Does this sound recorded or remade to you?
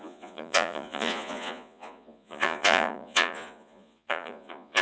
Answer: remade